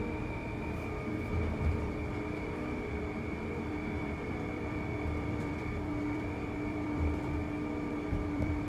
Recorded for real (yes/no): no